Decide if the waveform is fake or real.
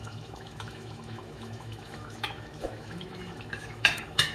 fake